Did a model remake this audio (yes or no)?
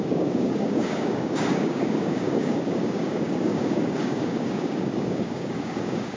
yes